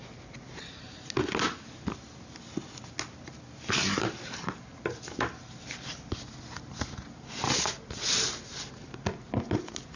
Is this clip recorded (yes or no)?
yes